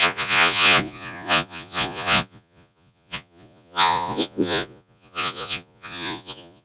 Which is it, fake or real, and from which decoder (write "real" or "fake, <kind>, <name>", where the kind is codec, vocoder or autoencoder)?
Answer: fake, vocoder, Vocos